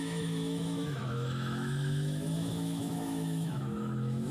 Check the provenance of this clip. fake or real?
fake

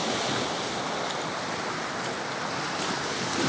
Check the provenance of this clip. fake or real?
real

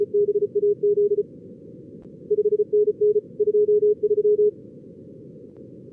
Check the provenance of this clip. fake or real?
real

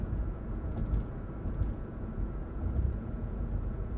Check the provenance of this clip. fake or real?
fake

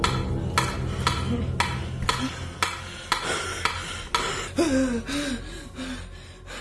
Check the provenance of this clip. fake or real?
real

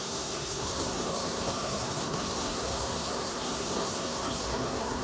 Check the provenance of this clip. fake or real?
fake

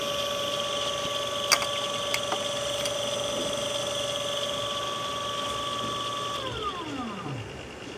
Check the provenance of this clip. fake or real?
real